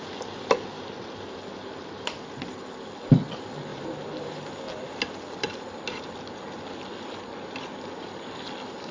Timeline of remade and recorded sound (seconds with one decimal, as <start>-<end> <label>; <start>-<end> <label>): 0.0-3.7 recorded; 3.7-4.5 remade; 4.5-8.9 recorded